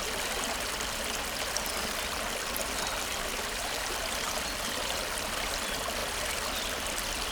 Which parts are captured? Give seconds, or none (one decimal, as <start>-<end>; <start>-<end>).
0.0-3.1; 5.5-7.3